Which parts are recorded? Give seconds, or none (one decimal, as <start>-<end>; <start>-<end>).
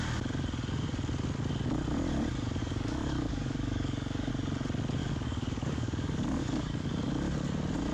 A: 0.0-2.6; 4.3-5.0; 6.9-7.9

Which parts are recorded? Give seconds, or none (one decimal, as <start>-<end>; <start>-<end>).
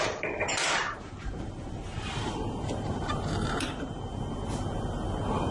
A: none